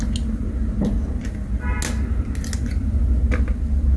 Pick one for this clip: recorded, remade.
recorded